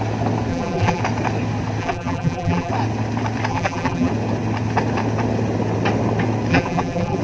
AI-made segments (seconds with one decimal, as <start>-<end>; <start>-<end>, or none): 0.5-1.0; 1.8-2.7; 3.5-4.1; 6.5-7.2